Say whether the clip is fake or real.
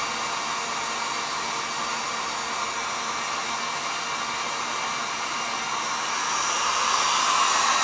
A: real